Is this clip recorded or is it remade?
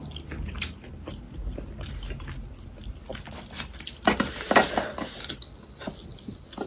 recorded